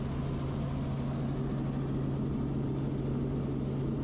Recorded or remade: recorded